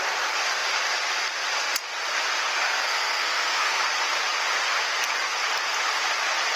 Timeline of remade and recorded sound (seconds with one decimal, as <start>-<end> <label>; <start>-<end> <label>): 0.0-2.7 recorded; 2.7-3.8 remade; 3.8-6.6 recorded